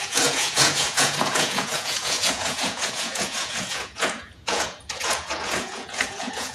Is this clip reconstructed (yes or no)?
yes